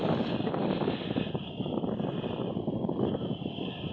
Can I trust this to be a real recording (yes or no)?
yes